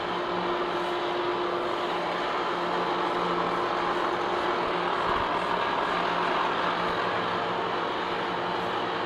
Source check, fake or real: real